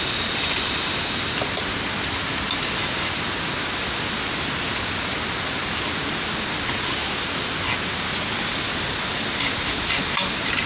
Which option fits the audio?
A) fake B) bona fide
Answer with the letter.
B